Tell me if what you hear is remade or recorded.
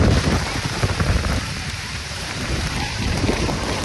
remade